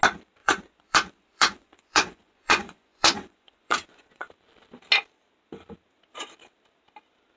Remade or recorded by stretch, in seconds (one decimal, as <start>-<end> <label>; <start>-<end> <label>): 0.0-0.4 recorded; 0.4-4.3 remade; 4.3-7.4 recorded